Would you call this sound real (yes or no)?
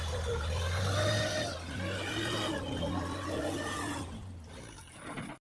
yes